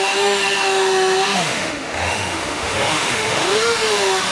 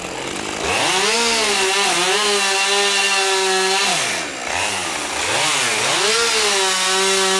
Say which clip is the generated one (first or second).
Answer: first